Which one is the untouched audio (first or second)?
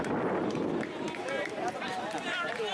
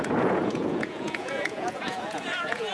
first